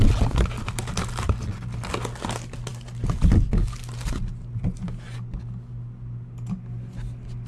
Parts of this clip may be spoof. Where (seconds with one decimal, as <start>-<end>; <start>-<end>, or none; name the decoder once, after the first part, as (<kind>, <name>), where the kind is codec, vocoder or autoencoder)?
none